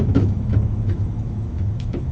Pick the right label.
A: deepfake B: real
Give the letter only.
A